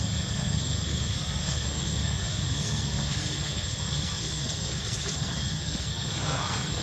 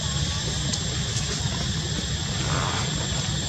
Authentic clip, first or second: second